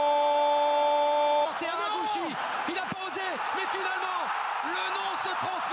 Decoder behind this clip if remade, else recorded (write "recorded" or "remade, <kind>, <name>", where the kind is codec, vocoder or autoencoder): recorded